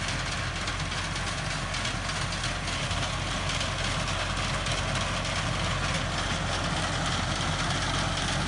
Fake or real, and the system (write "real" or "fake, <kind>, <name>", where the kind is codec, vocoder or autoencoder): real